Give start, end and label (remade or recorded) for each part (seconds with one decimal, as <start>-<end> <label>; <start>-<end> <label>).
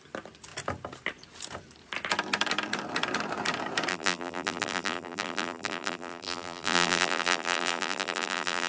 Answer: 0.0-3.9 recorded; 3.9-8.7 remade